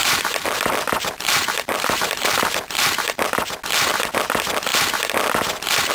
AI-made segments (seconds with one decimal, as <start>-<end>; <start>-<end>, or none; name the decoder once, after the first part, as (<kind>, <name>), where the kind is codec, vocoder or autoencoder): 0.0-3.3 (vocoder, BigVGAN v2)

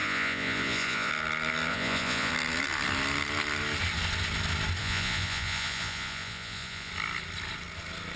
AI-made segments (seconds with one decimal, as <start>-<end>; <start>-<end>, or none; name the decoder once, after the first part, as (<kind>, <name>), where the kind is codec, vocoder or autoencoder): 0.0-1.1 (vocoder, Vocos); 1.7-2.3; 4.8-6.9

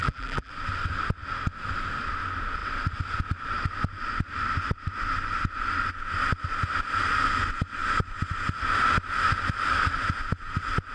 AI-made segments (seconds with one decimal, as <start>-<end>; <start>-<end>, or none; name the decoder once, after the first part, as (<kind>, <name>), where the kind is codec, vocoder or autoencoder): 0.0-0.5 (vocoder, BigVGAN v2)